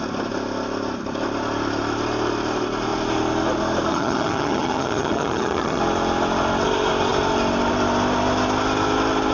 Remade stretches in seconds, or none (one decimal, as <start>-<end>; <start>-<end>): 3.9-5.8